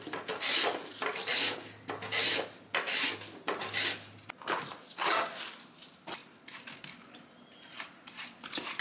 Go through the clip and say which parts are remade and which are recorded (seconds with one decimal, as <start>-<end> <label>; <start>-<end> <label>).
0.0-8.8 recorded

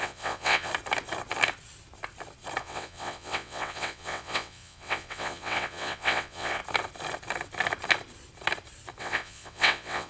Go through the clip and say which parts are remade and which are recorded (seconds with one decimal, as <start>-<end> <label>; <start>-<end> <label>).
0.0-0.7 remade; 0.7-2.6 recorded; 2.6-6.6 remade; 6.6-9.0 recorded; 9.0-10.1 remade

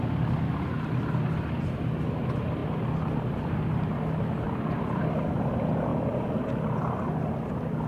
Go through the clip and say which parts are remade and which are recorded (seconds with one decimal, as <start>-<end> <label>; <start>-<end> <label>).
0.0-7.9 recorded

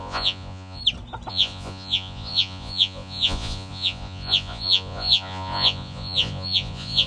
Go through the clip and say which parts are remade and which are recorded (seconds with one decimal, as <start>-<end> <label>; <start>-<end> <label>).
0.0-0.8 remade; 0.8-1.3 recorded; 1.3-7.1 remade

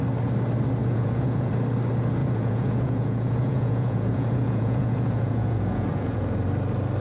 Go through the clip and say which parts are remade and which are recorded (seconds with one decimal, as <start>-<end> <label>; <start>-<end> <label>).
0.0-0.8 recorded; 0.8-1.5 remade; 1.5-2.2 recorded; 2.2-6.4 remade; 6.4-7.0 recorded

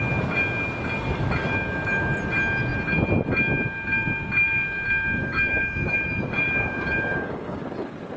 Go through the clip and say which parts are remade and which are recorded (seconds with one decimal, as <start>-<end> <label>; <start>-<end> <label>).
0.0-5.2 recorded; 5.2-7.6 remade; 7.6-8.2 recorded

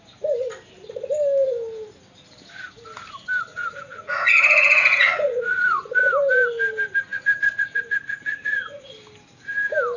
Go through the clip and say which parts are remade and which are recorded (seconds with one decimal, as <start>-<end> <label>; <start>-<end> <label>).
0.0-3.5 recorded; 3.5-6.0 remade; 6.0-7.1 recorded; 7.1-8.9 remade; 8.9-10.0 recorded

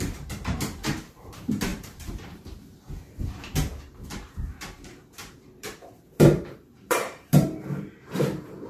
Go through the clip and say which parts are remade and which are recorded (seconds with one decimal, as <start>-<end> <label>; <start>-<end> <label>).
0.0-8.7 remade